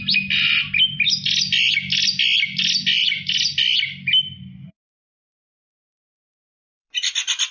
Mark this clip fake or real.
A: real